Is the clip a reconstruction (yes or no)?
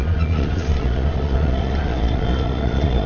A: yes